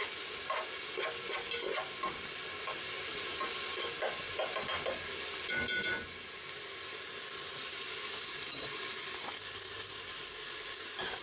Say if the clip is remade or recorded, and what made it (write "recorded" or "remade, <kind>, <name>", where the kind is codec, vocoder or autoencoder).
recorded